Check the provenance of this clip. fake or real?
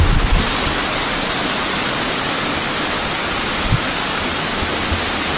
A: real